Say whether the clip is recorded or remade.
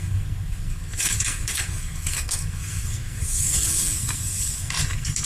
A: remade